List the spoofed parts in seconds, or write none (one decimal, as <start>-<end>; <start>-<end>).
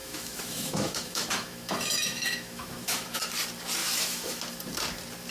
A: 0.0-3.2; 3.8-4.4